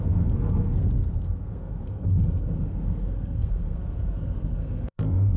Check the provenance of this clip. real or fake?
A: fake